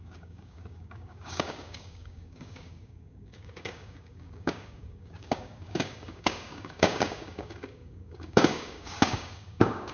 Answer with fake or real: fake